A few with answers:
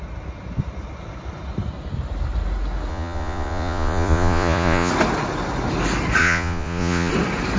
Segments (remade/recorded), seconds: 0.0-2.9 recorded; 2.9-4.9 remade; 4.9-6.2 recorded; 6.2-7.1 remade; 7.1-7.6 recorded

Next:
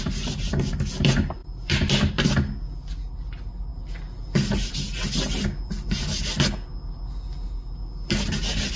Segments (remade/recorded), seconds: 0.0-8.8 recorded

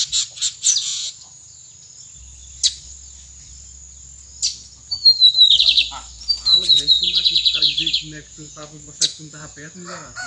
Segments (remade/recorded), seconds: 0.0-0.9 recorded; 0.9-1.7 remade; 1.7-6.5 recorded; 6.5-7.8 remade; 7.8-8.3 recorded; 8.3-9.7 remade; 9.7-10.3 recorded

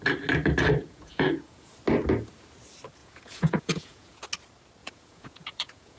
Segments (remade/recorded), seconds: 0.0-0.8 recorded; 0.8-1.7 remade; 1.7-3.0 recorded; 3.0-4.2 remade; 4.2-4.8 recorded; 4.8-6.0 remade

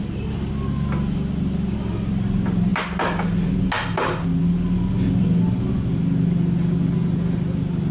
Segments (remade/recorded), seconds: 0.0-7.9 recorded